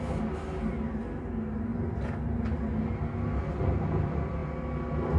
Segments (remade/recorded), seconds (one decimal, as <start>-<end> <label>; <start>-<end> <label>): 0.0-5.2 recorded